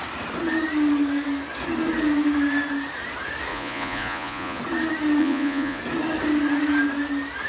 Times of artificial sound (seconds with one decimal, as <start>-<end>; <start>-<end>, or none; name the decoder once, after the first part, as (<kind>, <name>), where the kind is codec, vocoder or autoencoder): 3.5-4.6 (vocoder, Vocos); 5.2-5.8